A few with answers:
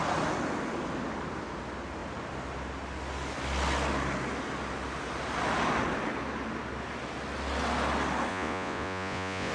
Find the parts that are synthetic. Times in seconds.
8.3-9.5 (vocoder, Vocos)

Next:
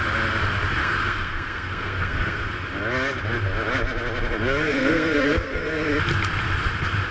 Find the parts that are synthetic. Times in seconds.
0.8-2.5 (codec, SNAC); 4.6-5.9

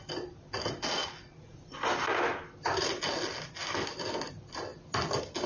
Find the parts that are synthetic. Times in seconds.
none

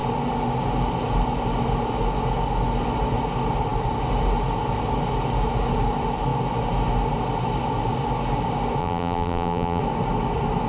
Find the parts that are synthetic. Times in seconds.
8.8-9.8 (vocoder, BigVGAN v2)